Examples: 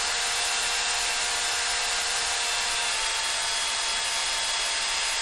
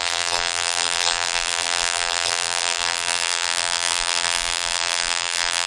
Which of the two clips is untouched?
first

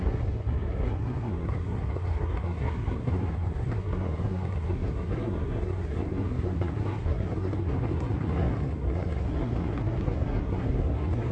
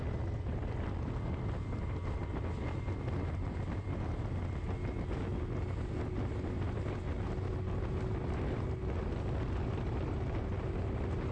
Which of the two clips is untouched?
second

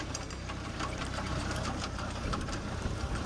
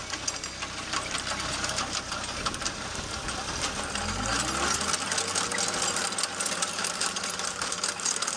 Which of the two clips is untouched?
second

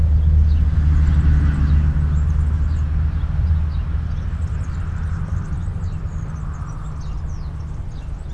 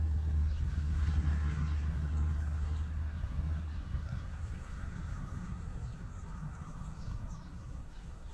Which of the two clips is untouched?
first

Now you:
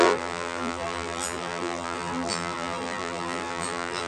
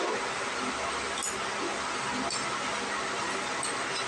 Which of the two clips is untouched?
second